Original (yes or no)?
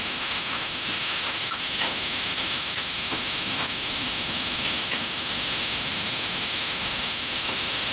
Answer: no